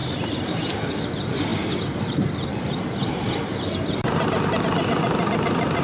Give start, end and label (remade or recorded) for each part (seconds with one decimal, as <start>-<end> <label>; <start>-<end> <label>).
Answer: 0.0-0.9 remade; 0.9-5.8 recorded